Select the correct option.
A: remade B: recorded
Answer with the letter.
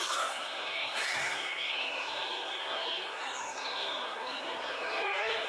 A